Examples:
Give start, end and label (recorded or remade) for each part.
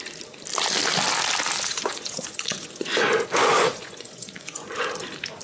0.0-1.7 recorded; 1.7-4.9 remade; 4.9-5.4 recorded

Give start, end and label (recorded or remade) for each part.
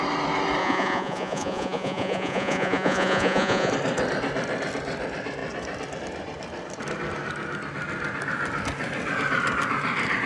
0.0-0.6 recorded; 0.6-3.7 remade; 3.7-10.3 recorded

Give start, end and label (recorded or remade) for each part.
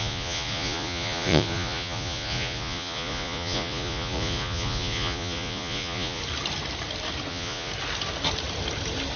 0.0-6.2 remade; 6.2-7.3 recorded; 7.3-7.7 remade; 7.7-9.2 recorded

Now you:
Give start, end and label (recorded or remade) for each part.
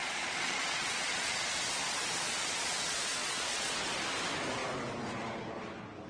0.0-3.7 remade; 3.7-6.1 recorded